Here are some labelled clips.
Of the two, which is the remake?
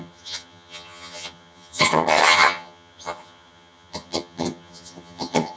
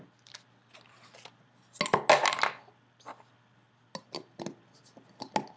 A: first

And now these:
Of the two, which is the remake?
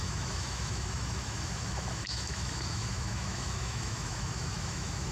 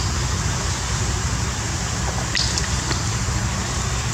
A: first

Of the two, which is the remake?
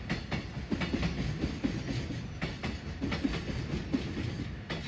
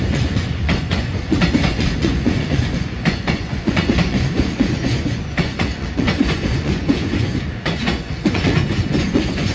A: second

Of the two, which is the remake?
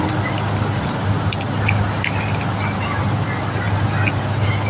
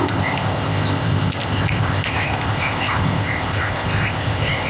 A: second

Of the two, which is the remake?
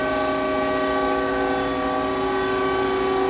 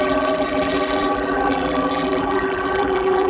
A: second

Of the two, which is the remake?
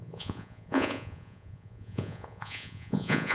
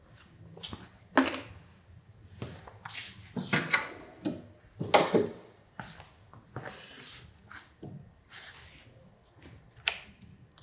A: first